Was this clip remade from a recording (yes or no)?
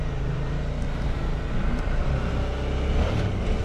no